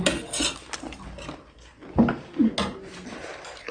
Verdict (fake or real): real